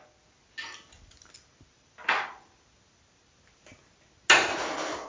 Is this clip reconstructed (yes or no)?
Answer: no